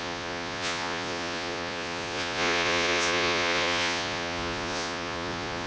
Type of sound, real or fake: fake